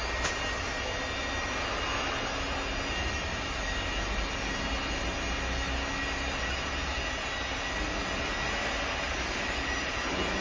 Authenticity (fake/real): real